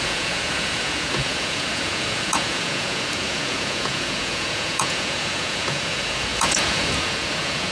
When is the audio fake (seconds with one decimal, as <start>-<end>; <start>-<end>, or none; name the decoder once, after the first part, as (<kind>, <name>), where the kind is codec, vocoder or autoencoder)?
0.0-7.7 (vocoder, Vocos)